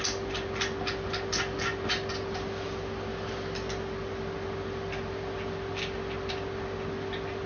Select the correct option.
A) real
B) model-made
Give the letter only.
A